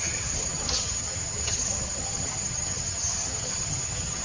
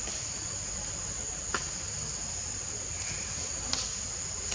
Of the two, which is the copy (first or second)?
first